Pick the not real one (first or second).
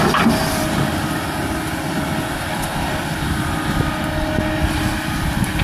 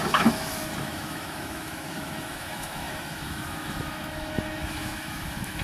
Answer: second